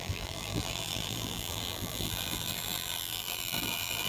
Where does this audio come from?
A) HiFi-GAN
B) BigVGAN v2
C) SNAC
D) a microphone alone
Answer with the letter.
B